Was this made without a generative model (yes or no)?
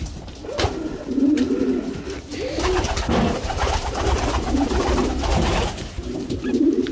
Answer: no